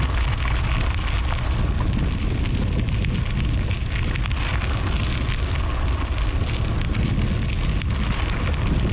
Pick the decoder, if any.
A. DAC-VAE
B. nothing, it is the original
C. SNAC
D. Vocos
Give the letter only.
B